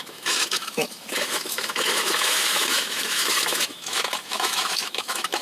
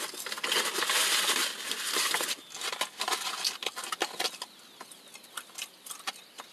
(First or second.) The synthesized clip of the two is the first